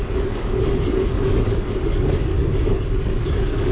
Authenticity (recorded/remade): remade